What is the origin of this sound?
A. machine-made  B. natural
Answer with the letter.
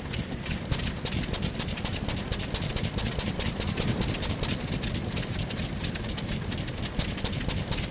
B